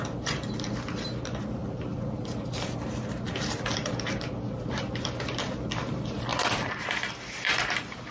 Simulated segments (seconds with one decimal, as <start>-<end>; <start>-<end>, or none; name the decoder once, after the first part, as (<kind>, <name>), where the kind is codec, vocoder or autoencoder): 0.0-8.1 (vocoder, BigVGAN v2)